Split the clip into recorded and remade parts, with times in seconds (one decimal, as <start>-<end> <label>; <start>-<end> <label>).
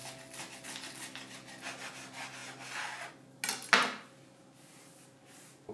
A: 0.0-5.7 recorded